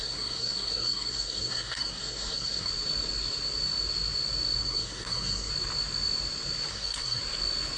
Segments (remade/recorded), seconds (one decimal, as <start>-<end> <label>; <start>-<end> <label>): 0.0-2.7 remade; 2.7-4.6 recorded; 4.6-5.5 remade; 5.5-6.7 recorded; 6.7-7.2 remade; 7.2-7.8 recorded